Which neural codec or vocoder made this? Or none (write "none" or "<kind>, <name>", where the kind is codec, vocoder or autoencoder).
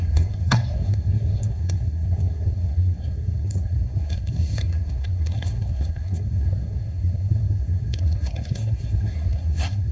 codec, SNAC